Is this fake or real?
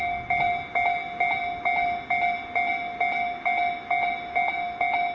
real